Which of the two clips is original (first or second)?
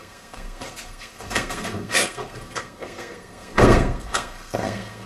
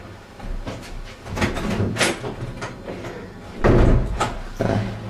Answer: second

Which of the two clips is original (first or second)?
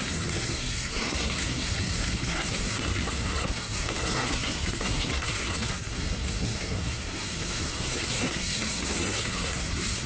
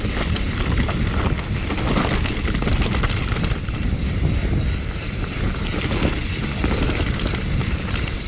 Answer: second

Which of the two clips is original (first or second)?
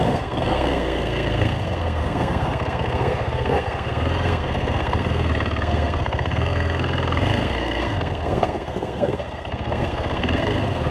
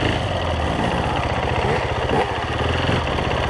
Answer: second